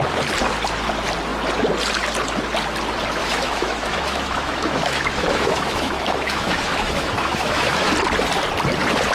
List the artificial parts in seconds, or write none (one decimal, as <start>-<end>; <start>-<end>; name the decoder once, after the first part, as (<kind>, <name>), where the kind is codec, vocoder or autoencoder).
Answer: 3.2-7.9 (autoencoder, DAC-VAE)